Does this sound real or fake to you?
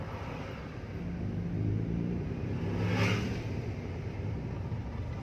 real